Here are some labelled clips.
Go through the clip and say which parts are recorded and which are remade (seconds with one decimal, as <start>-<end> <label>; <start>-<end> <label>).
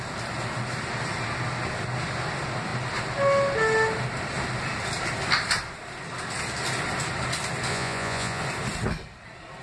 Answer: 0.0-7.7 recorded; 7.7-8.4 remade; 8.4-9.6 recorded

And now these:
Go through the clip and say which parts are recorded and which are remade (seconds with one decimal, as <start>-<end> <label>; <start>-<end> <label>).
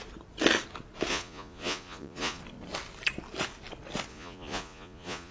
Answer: 0.0-1.1 recorded; 1.1-2.4 remade; 2.4-4.1 recorded; 4.1-5.3 remade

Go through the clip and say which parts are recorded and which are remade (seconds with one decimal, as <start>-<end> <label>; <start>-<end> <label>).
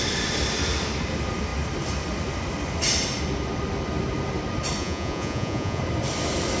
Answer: 0.0-4.8 recorded; 4.8-5.8 remade; 5.8-6.6 recorded